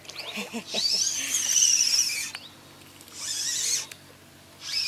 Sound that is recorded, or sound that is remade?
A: recorded